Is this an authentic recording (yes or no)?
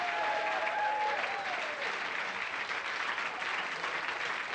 yes